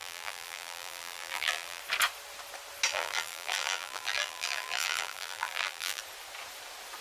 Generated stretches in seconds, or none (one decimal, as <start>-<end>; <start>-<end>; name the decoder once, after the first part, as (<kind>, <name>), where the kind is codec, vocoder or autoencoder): 0.0-1.8 (vocoder, BigVGAN v2); 2.9-6.0